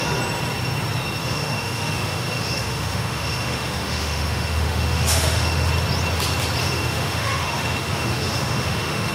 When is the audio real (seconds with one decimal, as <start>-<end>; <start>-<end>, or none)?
0.0-1.2; 5.7-6.6